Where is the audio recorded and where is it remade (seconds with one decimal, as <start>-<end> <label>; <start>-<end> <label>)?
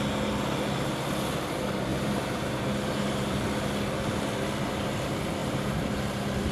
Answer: 0.0-1.9 recorded; 1.9-3.4 remade; 3.4-5.4 recorded; 5.4-6.5 remade